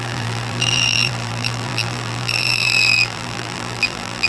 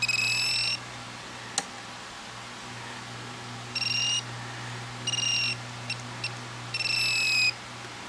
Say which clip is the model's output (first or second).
first